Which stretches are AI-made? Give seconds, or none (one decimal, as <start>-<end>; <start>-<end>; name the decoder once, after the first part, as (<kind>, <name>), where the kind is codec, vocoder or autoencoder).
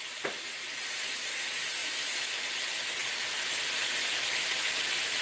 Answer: 1.8-2.4 (autoencoder, DAC-VAE)